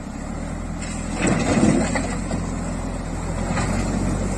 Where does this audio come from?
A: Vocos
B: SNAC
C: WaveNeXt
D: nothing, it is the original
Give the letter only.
D